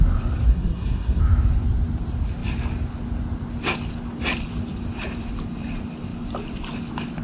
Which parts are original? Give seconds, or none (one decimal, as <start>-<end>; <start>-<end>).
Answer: 0.0-0.5; 1.2-7.2